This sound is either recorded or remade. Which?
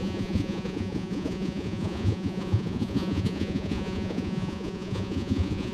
remade